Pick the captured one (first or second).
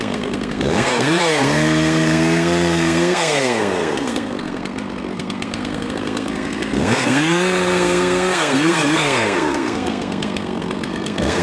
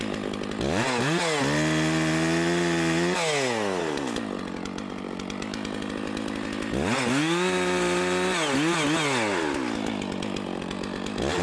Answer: second